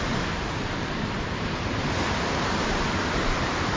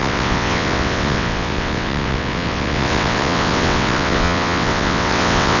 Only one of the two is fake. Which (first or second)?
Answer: second